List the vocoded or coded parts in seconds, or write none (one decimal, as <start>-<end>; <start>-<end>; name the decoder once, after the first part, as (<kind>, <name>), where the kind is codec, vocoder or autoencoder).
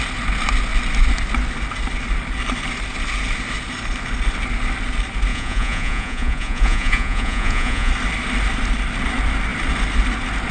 5.3-7.9 (vocoder, Vocos)